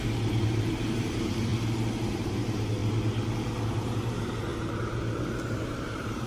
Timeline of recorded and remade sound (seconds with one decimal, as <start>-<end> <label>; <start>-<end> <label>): 0.0-1.5 remade; 1.5-2.1 recorded; 2.1-2.8 remade; 2.8-3.7 recorded; 3.7-6.3 remade